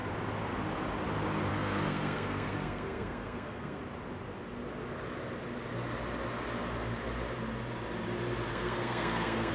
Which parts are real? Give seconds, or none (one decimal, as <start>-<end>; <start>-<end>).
0.0-1.5; 3.8-8.5